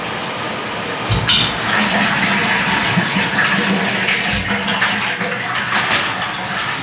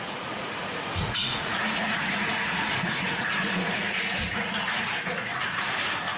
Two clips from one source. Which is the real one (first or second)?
first